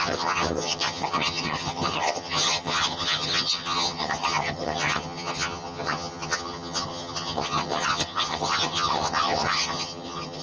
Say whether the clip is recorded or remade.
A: remade